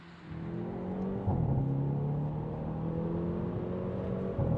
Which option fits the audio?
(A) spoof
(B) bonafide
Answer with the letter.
B